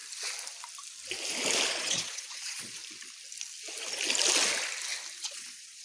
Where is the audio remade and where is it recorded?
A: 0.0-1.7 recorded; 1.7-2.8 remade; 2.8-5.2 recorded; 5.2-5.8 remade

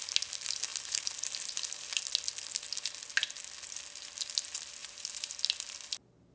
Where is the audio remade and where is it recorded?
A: 0.0-0.7 recorded; 0.7-2.0 remade; 2.0-4.8 recorded; 4.8-5.4 remade; 5.4-6.3 recorded